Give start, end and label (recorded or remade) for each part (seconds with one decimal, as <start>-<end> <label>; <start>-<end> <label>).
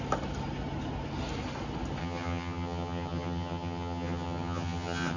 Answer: 0.0-2.0 recorded; 2.0-5.2 remade